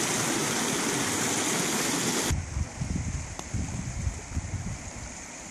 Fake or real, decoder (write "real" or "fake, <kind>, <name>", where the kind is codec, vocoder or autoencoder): real